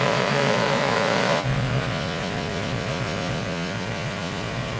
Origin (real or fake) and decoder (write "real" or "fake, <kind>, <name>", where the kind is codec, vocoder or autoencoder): fake, vocoder, Vocos